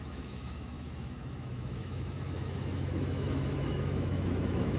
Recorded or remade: remade